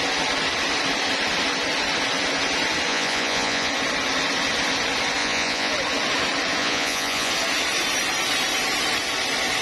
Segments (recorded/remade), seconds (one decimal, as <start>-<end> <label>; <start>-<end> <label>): 0.0-2.9 recorded; 2.9-3.7 remade; 3.7-5.2 recorded; 5.2-5.7 remade; 5.7-6.6 recorded; 6.6-7.3 remade; 7.3-9.6 recorded